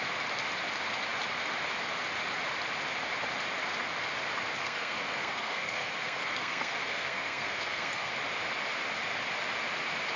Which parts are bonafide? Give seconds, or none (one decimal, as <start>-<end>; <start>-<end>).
0.0-4.6; 8.1-10.2